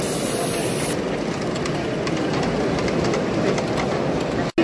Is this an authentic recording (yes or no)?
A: yes